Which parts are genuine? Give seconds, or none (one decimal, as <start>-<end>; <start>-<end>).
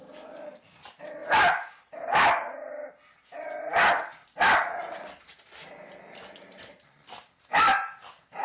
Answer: 0.0-8.4